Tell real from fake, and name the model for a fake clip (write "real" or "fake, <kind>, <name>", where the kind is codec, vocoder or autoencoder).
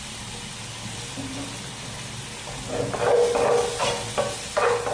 real